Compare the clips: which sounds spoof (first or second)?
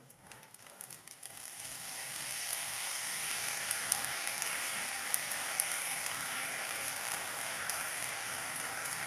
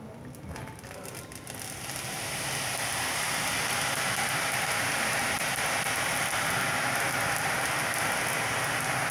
first